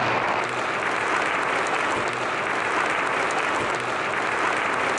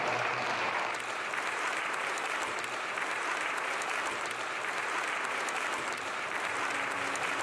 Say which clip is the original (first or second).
first